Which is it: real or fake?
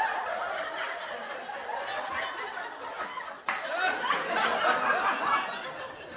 real